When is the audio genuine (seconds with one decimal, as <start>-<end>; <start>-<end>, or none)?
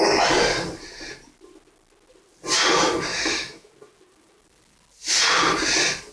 0.0-3.1; 3.7-6.1